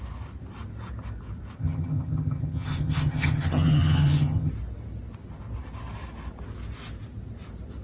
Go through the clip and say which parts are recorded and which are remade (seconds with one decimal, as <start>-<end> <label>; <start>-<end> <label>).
0.0-1.6 recorded; 1.6-4.5 remade; 4.5-7.8 recorded